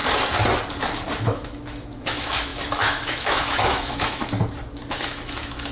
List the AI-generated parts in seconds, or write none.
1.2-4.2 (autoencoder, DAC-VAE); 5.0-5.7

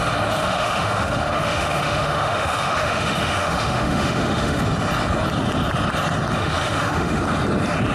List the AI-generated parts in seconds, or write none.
0.4-4.6 (autoencoder, DAC-VAE); 6.4-7.2

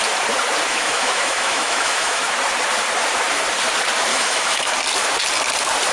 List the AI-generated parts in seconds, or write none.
0.7-2.2 (autoencoder, DAC-VAE); 4.1-4.7

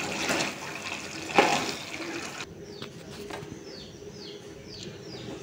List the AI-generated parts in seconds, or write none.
none

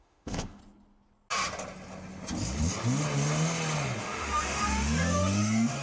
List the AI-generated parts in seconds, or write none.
0.0-0.6 (autoencoder, DAC-VAE); 4.0-5.8

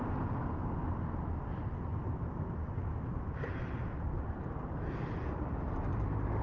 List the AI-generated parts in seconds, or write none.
2.6-3.3 (autoencoder, DAC-VAE)

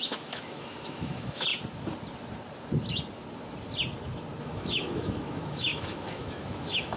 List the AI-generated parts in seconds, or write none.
0.0-1.5 (autoencoder, DAC-VAE); 4.4-7.0

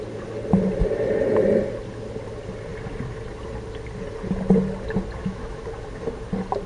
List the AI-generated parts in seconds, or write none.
5.2-5.7 (autoencoder, DAC-VAE)